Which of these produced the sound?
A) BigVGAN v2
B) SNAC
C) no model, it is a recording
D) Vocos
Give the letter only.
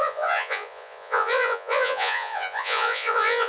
D